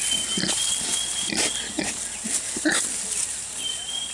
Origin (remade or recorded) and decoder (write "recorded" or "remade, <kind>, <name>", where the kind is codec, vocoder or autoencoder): recorded